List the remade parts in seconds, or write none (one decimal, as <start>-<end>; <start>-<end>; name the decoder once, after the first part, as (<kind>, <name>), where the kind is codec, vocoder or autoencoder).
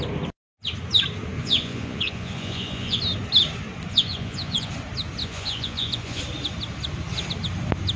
1.4-3.0 (vocoder, Vocos); 3.9-4.7; 5.2-6.2